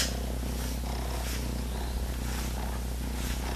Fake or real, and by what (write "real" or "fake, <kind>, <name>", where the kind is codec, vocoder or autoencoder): real